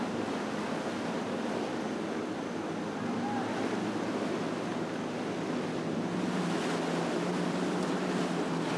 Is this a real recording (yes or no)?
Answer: yes